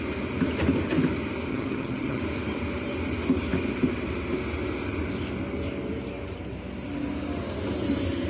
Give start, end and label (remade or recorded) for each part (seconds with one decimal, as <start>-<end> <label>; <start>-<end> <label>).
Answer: 0.0-1.5 recorded; 1.5-2.2 remade; 2.2-8.3 recorded